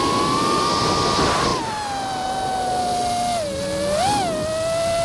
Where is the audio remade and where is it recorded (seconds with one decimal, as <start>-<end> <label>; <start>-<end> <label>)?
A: 0.0-5.0 recorded